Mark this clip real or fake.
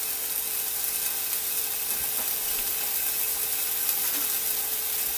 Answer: real